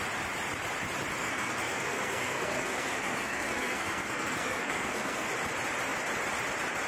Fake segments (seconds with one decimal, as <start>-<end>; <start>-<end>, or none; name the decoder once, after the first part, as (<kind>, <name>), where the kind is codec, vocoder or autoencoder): 1.2-5.3 (codec, SNAC)